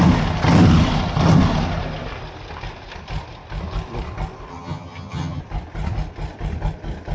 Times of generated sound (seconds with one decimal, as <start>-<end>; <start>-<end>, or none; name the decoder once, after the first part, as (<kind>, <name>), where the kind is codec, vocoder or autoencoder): 4.5-5.4 (vocoder, HiFi-GAN)